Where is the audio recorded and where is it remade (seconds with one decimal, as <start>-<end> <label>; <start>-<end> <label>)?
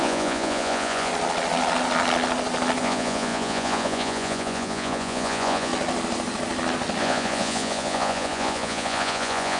0.0-1.1 remade; 1.1-2.8 recorded; 2.8-5.7 remade; 5.7-7.0 recorded; 7.0-9.6 remade